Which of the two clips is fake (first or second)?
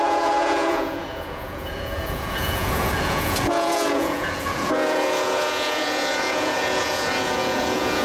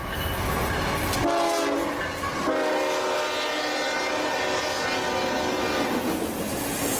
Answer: first